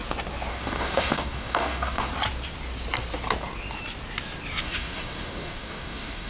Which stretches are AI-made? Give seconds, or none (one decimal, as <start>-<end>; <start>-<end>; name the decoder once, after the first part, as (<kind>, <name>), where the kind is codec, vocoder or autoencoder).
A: 0.5-2.1 (codec, DAC); 4.6-6.3